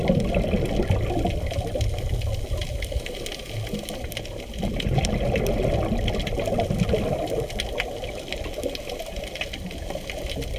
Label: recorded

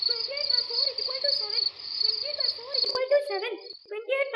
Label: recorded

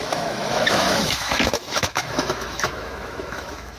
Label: remade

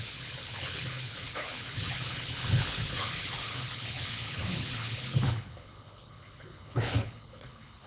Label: remade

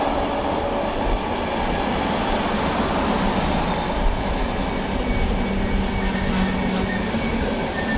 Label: recorded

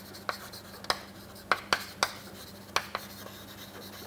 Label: recorded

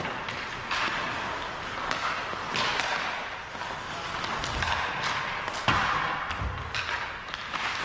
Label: recorded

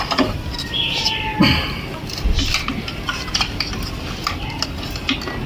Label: recorded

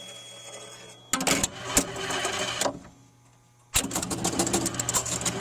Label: recorded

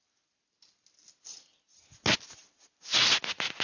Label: recorded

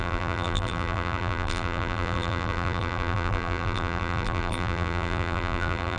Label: remade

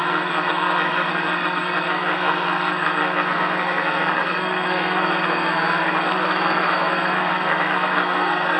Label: remade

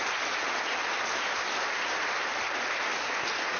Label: recorded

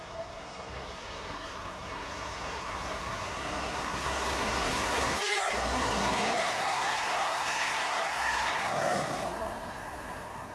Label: remade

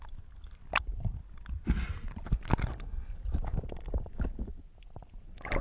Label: recorded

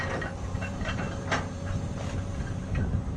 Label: remade